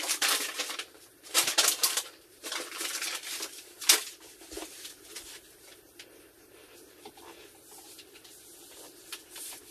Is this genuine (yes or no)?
no